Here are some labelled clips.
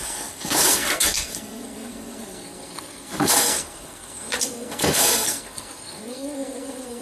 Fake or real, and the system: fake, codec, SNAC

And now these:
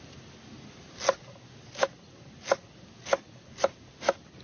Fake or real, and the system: real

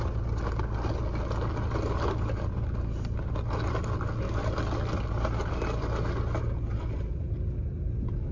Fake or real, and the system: real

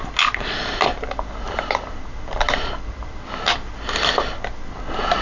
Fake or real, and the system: real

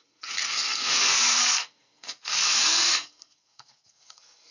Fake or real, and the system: fake, codec, SNAC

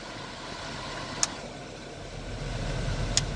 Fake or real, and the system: real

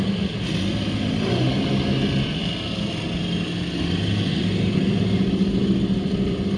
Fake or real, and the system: real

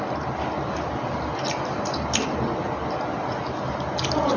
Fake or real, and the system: real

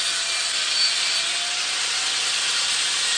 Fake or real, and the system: real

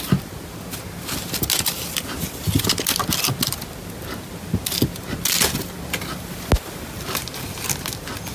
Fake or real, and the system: real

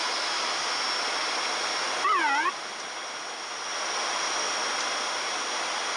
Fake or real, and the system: real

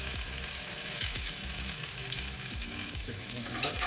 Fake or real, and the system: fake, autoencoder, DAC-VAE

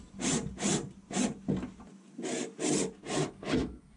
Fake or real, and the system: real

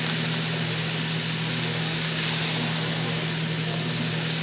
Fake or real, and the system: real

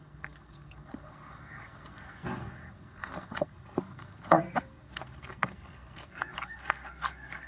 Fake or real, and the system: fake, codec, SNAC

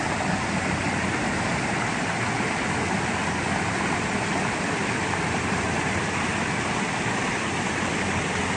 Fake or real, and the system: real